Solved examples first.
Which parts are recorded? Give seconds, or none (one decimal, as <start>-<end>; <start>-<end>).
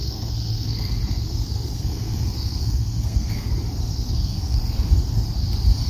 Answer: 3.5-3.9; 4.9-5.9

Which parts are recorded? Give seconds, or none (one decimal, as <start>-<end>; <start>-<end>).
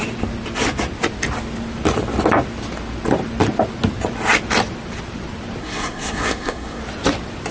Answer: 0.0-5.6; 6.8-7.5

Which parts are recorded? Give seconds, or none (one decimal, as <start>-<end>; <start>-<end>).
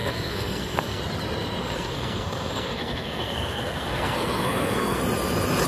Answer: 1.0-1.6; 5.0-5.7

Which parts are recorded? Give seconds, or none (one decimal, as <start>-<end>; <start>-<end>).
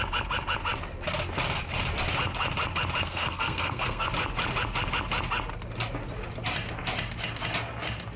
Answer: 0.0-3.0; 4.1-8.2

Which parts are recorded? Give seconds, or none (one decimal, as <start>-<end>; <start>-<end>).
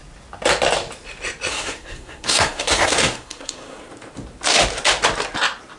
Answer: 0.0-1.5; 3.9-5.8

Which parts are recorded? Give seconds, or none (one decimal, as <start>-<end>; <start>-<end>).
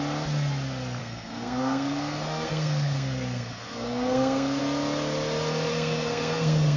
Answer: 0.0-1.0; 4.6-5.7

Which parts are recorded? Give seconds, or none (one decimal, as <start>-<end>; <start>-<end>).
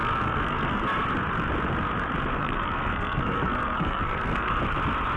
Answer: 0.8-2.4; 4.6-5.2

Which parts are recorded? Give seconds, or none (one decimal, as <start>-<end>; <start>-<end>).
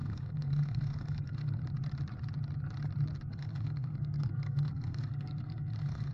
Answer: 1.6-3.3